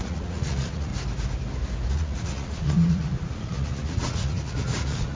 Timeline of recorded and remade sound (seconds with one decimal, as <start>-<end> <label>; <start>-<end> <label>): 0.0-0.9 remade; 0.9-1.9 recorded; 1.9-5.2 remade